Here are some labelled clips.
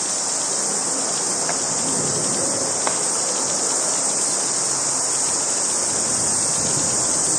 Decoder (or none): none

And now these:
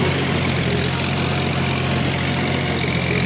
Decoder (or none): none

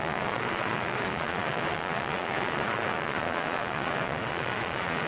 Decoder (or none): vocoder, Vocos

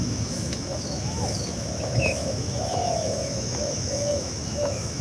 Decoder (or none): autoencoder, DAC-VAE